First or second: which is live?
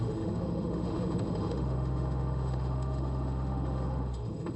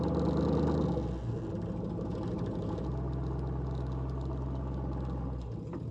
second